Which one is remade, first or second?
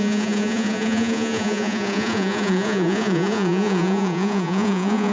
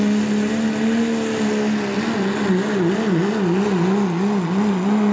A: first